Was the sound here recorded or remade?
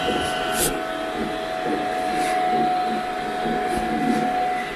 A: recorded